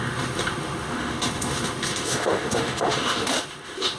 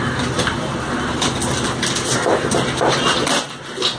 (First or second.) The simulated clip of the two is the first